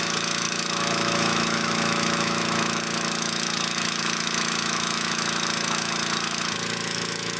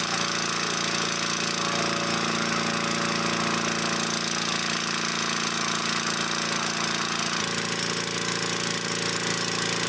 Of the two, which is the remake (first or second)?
first